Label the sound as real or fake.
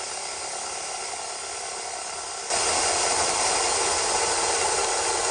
real